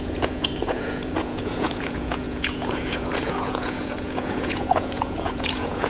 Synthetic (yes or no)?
yes